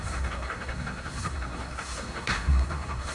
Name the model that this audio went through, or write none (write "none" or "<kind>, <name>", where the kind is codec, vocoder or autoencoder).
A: codec, SNAC